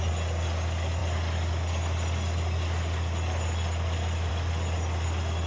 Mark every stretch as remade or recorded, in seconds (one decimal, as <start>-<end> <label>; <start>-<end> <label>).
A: 0.0-5.5 recorded